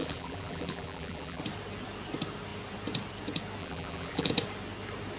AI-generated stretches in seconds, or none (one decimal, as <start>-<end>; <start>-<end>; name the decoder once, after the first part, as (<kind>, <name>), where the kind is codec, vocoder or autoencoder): 0.0-1.4 (vocoder, BigVGAN v2); 3.6-4.3